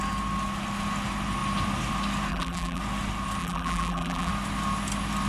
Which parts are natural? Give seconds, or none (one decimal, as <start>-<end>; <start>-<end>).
0.0-2.3; 2.8-3.4; 4.3-5.3